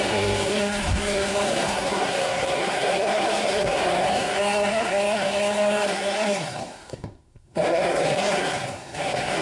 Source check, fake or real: fake